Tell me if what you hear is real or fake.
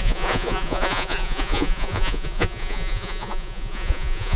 fake